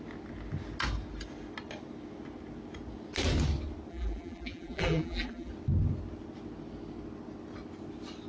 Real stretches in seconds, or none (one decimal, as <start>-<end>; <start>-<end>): 0.0-3.9; 5.5-8.3